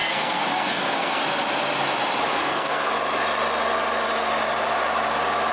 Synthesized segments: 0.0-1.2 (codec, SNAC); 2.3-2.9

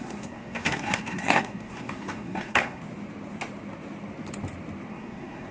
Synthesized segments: 0.0-2.8 (codec, SNAC); 4.9-5.5

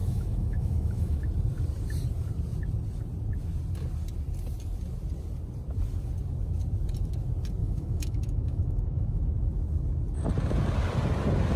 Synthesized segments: 0.0-1.3 (autoencoder, DAC-VAE); 7.6-9.2

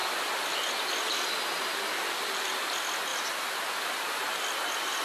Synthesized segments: none